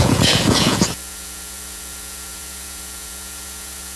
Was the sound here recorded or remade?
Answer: remade